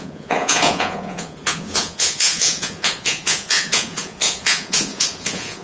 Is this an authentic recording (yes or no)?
no